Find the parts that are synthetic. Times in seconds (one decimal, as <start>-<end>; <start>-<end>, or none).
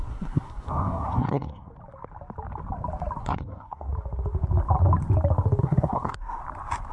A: 0.0-1.7; 3.2-3.9; 5.6-6.4